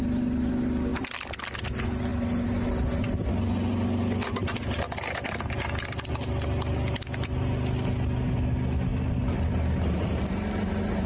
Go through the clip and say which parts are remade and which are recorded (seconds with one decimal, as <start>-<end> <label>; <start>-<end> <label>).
0.0-0.9 recorded; 0.9-1.6 remade; 1.6-8.9 recorded; 8.9-10.2 remade; 10.2-11.1 recorded